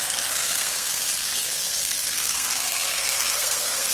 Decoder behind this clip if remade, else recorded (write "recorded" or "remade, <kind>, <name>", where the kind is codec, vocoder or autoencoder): remade, codec, SNAC